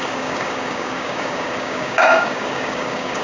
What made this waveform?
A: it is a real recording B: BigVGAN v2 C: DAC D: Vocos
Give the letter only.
C